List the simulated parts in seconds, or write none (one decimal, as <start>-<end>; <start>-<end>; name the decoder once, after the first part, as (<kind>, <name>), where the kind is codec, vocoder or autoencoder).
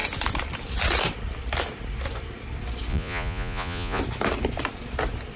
2.9-4.0 (vocoder, Vocos)